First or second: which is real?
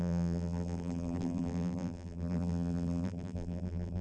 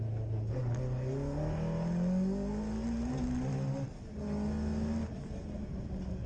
second